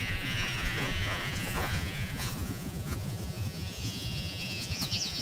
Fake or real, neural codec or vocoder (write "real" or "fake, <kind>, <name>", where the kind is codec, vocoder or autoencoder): fake, vocoder, Vocos